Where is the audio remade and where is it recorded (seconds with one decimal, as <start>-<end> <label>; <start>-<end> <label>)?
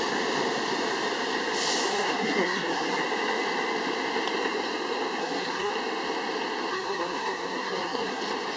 0.0-1.9 recorded; 1.9-3.0 remade; 3.0-5.2 recorded; 5.2-5.7 remade; 5.7-6.7 recorded; 6.7-8.2 remade; 8.2-8.6 recorded